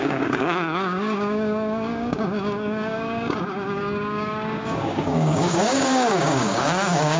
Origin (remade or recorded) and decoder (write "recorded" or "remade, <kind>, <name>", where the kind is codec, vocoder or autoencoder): remade, codec, DAC